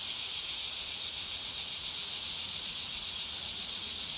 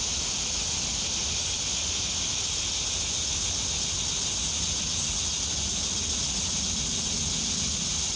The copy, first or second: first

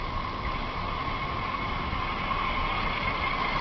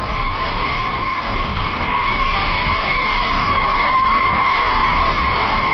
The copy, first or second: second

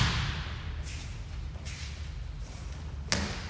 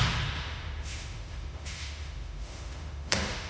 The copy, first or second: second